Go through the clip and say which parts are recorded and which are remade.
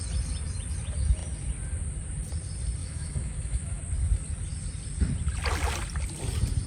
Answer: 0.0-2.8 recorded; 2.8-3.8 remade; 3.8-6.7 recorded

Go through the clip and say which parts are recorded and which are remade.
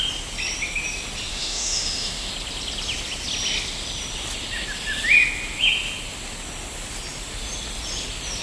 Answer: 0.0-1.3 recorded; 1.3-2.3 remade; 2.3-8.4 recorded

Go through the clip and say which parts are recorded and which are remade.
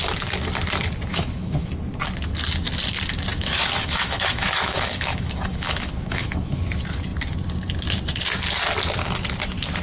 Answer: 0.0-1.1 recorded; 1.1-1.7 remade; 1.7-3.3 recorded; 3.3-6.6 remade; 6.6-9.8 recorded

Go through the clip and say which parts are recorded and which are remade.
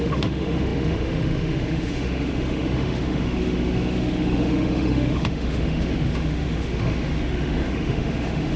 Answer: 0.0-8.6 remade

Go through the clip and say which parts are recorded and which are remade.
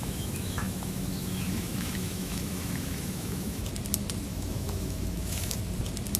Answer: 0.0-3.7 remade; 3.7-4.3 recorded; 4.3-5.6 remade; 5.6-6.2 recorded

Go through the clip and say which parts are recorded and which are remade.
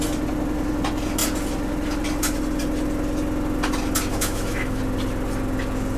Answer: 0.0-4.1 recorded; 4.1-4.8 remade; 4.8-6.0 recorded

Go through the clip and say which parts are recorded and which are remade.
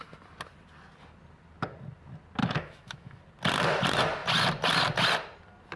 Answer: 0.0-2.4 recorded; 2.4-3.2 remade; 3.2-5.8 recorded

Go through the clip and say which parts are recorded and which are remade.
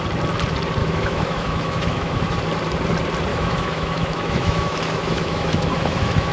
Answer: 0.0-0.8 recorded; 0.8-2.4 remade; 2.4-3.3 recorded; 3.3-6.3 remade